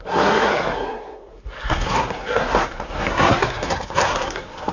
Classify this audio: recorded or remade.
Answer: remade